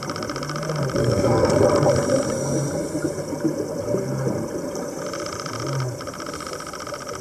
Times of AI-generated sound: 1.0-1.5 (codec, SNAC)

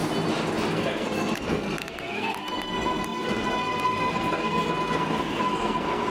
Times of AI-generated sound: 0.7-6.1 (codec, SNAC)